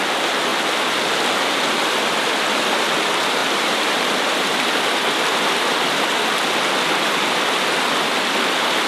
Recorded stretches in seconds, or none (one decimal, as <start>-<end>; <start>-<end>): 0.0-3.4; 4.6-8.9